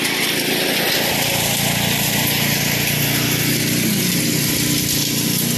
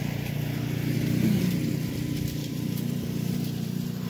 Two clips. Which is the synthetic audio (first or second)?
second